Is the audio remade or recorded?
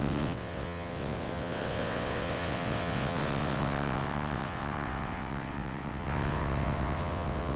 remade